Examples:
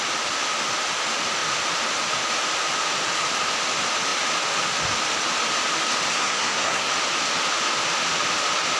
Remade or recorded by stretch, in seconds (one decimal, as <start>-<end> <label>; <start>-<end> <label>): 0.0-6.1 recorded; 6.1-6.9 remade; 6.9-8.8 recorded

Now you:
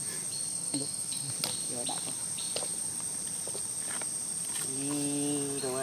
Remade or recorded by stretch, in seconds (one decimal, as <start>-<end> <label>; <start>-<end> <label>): 0.0-0.5 recorded; 0.5-1.3 remade; 1.3-5.8 recorded

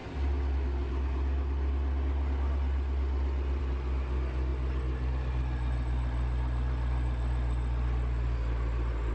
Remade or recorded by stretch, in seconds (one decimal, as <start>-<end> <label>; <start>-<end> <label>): 0.0-9.1 recorded

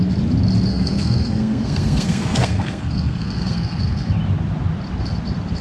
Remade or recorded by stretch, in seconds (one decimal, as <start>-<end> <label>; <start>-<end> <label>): 0.0-0.7 recorded; 0.7-4.1 remade; 4.1-5.6 recorded

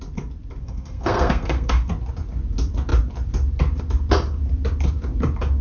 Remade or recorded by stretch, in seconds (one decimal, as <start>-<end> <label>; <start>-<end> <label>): 0.0-0.6 recorded; 0.6-1.9 remade; 1.9-5.6 recorded